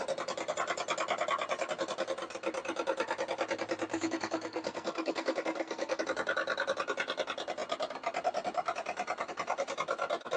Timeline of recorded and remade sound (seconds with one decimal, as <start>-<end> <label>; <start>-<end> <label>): 0.0-3.9 recorded; 3.9-6.0 remade; 6.0-10.4 recorded